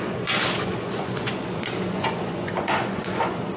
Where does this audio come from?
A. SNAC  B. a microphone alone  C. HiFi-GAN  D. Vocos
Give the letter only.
D